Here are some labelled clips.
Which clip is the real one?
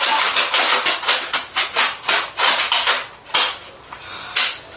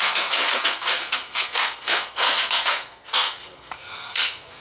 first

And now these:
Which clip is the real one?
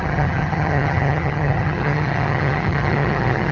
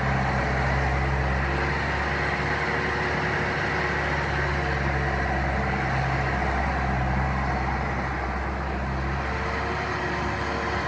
second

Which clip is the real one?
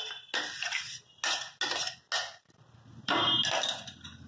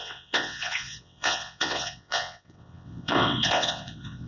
first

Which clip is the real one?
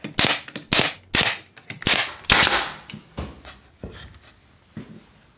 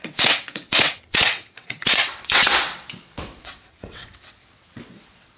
first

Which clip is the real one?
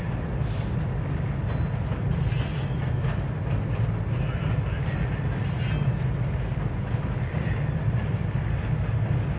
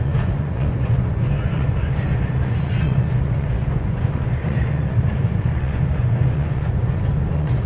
first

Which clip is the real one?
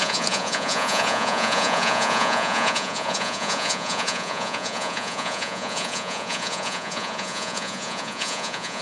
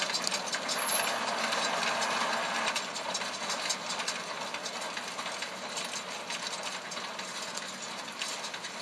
second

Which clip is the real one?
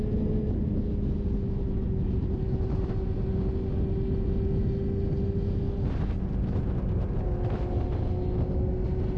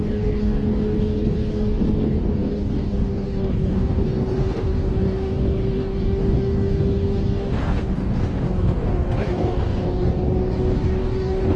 first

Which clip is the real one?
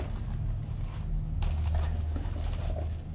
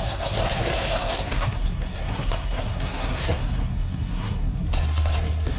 first